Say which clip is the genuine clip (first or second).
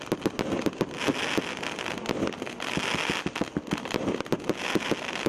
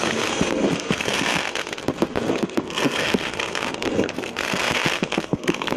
first